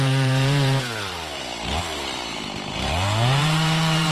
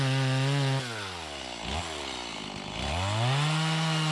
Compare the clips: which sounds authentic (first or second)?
second